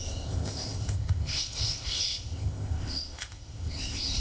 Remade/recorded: remade